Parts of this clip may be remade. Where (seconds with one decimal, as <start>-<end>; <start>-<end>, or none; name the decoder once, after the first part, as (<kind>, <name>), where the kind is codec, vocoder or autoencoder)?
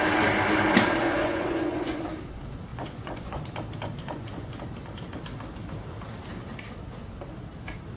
1.0-2.0 (vocoder, Vocos); 2.7-3.4; 4.0-4.5